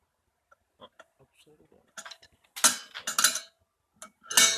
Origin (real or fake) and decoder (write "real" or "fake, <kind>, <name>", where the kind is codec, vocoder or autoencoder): real